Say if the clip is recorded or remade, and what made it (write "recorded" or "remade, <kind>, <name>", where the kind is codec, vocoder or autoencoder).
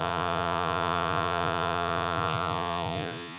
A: remade, vocoder, Vocos